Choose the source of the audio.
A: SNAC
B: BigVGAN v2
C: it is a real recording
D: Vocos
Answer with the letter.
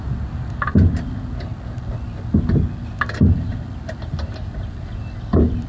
C